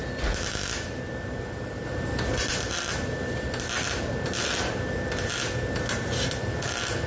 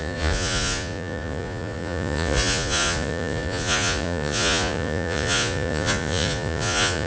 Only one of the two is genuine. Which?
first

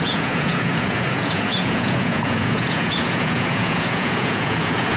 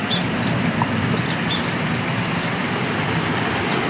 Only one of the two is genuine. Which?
second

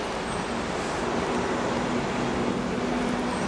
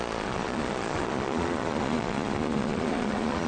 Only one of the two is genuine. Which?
first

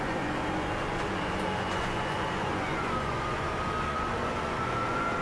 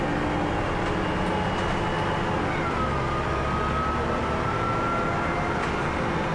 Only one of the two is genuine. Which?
second